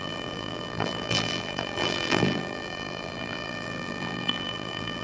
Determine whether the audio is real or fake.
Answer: fake